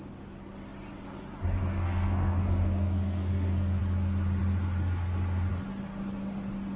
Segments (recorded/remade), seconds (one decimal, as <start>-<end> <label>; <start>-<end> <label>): 0.0-1.6 recorded; 1.6-3.8 remade; 3.8-6.8 recorded